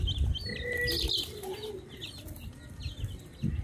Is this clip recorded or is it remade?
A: recorded